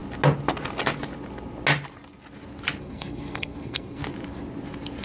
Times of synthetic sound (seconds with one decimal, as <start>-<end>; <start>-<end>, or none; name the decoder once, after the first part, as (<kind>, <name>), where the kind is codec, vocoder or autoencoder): 2.8-4.0 (codec, SNAC)